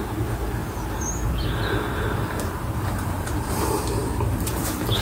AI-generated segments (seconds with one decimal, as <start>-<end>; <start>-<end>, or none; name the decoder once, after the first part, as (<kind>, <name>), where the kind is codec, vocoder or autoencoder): 0.6-3.6 (vocoder, BigVGAN v2)